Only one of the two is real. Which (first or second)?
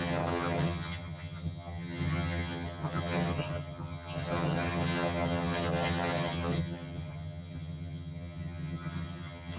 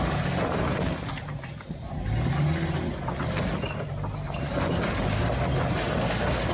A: second